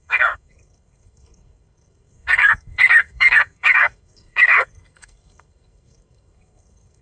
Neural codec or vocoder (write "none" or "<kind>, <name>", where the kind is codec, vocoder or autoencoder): codec, SNAC